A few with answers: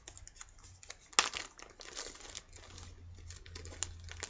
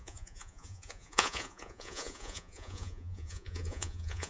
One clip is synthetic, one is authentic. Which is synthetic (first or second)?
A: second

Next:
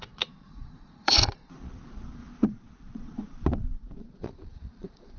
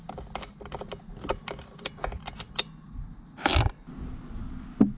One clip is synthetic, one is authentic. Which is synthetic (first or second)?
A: first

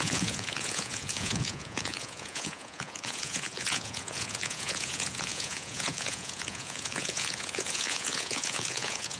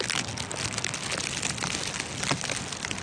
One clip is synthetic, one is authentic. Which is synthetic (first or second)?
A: first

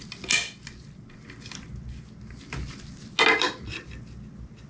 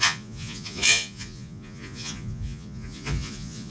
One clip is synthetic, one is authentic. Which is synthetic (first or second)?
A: second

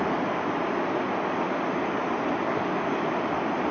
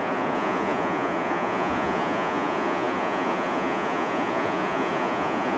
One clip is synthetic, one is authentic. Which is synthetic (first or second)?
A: second